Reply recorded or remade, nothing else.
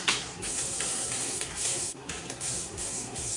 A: remade